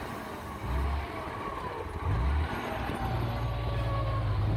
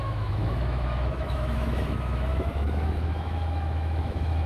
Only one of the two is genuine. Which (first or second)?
first